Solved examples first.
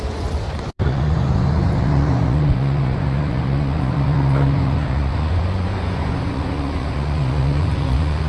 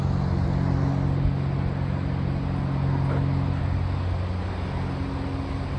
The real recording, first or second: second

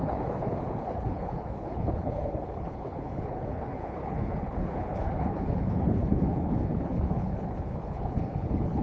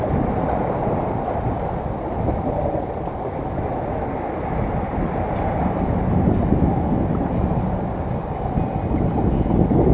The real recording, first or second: second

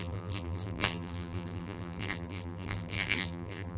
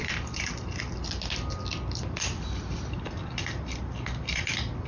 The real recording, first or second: second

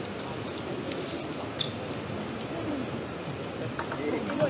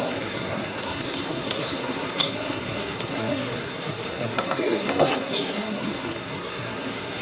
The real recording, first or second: first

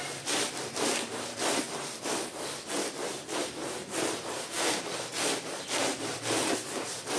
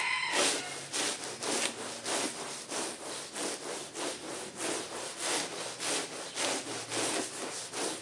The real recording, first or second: second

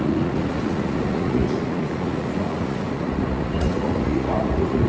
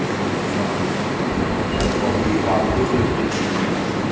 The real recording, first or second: second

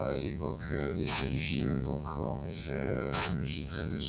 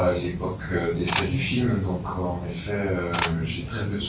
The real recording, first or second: second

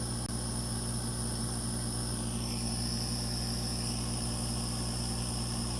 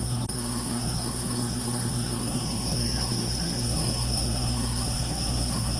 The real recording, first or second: first